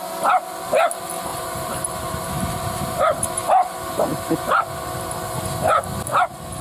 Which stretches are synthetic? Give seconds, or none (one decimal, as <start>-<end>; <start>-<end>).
1.3-3.3